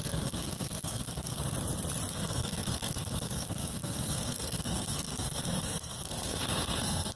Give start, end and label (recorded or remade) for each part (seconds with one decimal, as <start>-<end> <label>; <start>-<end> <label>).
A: 0.0-1.4 remade; 1.4-2.1 recorded; 2.1-7.2 remade